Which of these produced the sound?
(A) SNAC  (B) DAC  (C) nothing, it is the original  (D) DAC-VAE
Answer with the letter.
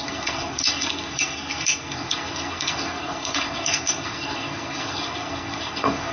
A